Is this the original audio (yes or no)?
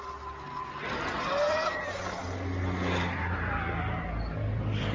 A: yes